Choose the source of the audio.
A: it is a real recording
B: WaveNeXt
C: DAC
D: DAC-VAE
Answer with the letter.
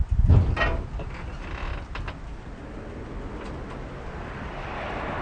A